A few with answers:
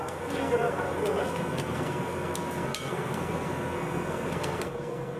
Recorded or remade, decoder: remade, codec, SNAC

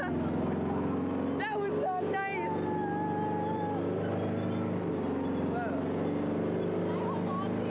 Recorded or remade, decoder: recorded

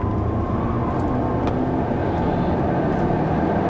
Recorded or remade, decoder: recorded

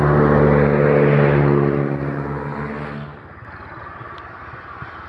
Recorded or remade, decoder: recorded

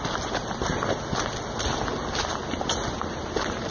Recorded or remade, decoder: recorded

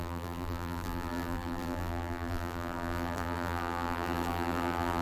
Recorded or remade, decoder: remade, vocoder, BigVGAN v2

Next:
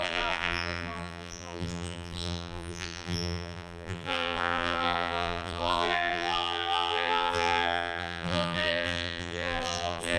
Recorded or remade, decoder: remade, vocoder, BigVGAN v2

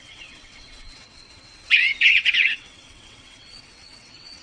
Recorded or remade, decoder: remade, vocoder, WaveNeXt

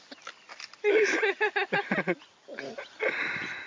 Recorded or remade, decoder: recorded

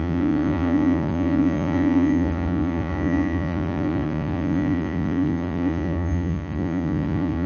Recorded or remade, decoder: remade, vocoder, Vocos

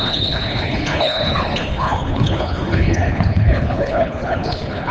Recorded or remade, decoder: remade, codec, HILCodec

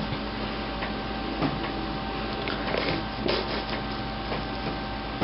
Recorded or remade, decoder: recorded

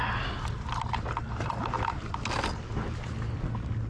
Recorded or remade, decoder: recorded